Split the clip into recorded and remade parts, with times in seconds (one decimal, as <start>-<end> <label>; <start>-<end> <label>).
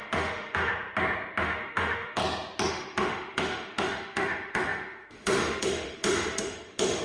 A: 0.0-0.7 remade; 0.7-1.4 recorded; 1.4-2.2 remade; 2.2-2.7 recorded; 2.7-7.0 remade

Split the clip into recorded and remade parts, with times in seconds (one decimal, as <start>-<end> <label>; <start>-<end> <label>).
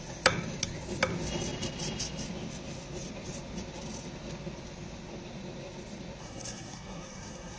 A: 0.0-6.2 recorded; 6.2-7.6 remade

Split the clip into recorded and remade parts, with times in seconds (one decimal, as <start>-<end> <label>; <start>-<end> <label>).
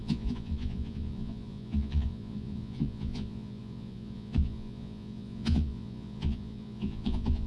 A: 0.0-7.5 remade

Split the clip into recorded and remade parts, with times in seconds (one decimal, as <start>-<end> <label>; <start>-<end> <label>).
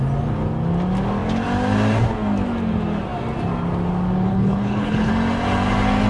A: 0.0-4.3 recorded; 4.3-5.1 remade; 5.1-6.1 recorded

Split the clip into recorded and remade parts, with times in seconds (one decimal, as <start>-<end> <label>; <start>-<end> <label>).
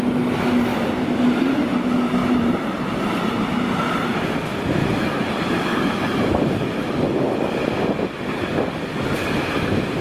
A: 0.0-0.7 recorded; 0.7-1.2 remade; 1.2-2.2 recorded; 2.2-2.8 remade; 2.8-4.8 recorded; 4.8-6.3 remade; 6.3-10.0 recorded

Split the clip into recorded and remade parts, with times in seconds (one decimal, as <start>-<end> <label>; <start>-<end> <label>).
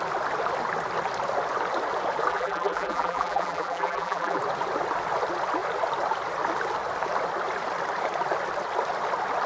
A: 0.0-2.3 recorded; 2.3-4.4 remade; 4.4-9.5 recorded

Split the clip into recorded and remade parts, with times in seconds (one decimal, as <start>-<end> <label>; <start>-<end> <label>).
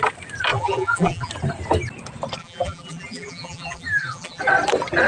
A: 0.0-0.5 recorded; 0.5-1.3 remade; 1.3-2.4 recorded; 2.4-4.4 remade; 4.4-5.1 recorded